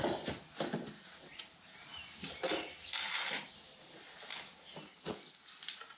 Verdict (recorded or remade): recorded